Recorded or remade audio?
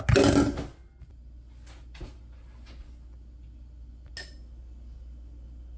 recorded